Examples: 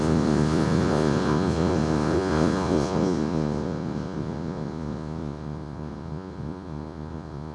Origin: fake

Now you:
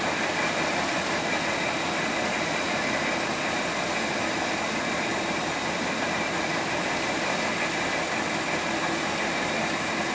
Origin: real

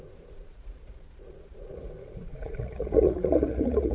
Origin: fake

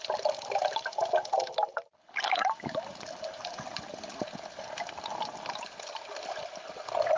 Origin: real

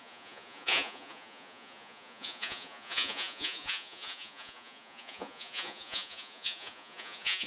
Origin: fake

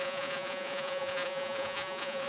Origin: fake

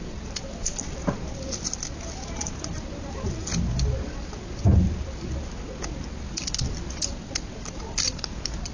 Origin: real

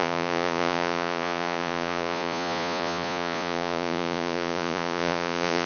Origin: fake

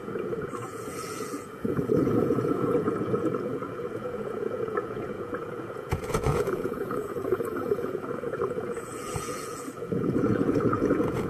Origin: fake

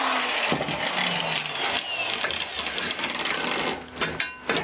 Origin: real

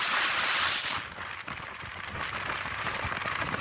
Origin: real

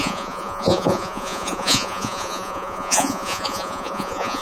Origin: fake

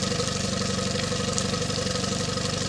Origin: real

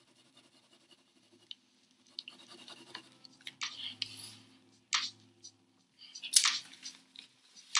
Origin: real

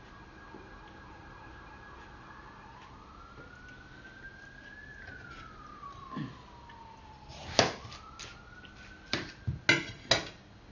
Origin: real